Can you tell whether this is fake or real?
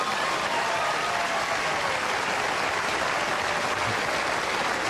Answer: real